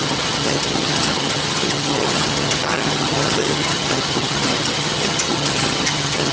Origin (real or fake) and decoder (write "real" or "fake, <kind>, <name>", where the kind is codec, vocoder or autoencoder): fake, vocoder, HiFi-GAN